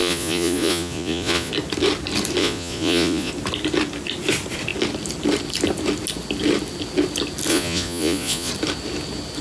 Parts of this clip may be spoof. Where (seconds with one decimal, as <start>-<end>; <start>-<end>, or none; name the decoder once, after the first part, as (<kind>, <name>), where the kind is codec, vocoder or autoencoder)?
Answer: 0.0-1.5 (vocoder, Vocos); 2.4-3.3; 7.5-8.5